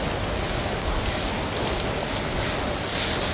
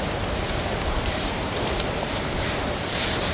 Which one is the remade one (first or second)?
second